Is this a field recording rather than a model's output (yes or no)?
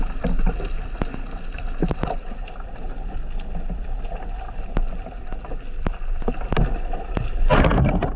yes